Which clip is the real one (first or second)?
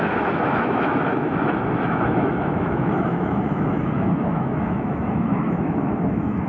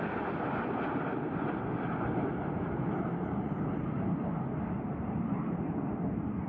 second